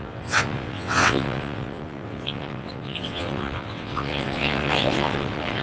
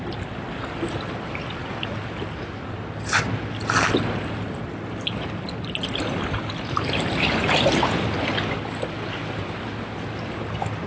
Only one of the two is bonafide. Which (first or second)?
second